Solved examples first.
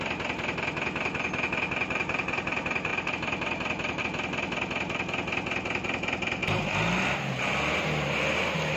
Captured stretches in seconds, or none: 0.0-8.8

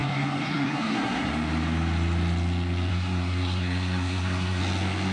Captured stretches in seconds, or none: 1.3-2.9; 4.6-5.1

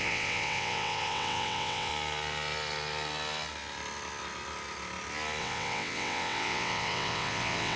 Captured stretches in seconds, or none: 1.9-5.4

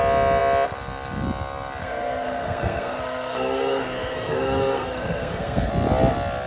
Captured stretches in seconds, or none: 0.0-1.8; 5.7-6.5

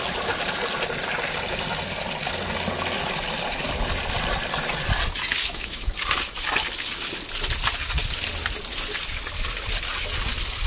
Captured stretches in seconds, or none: 0.0-5.4; 5.9-10.7

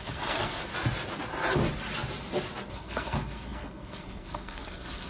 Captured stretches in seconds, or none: 0.7-2.7

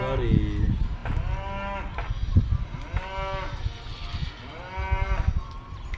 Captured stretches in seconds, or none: 0.0-6.0